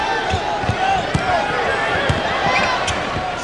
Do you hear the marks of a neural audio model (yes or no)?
no